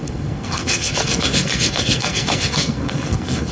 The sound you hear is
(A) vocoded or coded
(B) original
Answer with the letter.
A